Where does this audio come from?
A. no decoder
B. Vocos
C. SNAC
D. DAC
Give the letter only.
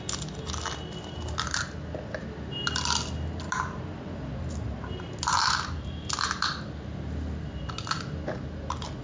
A